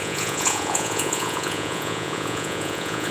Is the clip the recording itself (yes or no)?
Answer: no